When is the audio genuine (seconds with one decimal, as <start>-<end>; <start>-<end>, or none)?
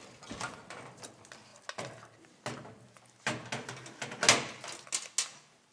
0.0-5.7